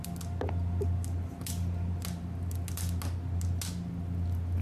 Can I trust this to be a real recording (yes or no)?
yes